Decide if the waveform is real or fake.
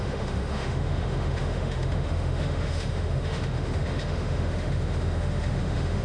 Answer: fake